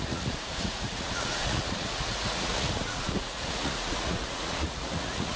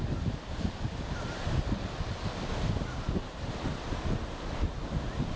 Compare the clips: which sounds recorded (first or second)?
second